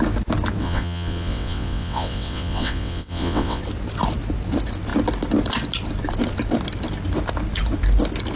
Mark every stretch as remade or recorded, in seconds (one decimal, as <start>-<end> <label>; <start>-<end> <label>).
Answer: 0.0-0.6 recorded; 0.6-3.6 remade; 3.6-8.4 recorded